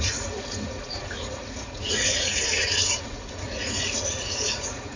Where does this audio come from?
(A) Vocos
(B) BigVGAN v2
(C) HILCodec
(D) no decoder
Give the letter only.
A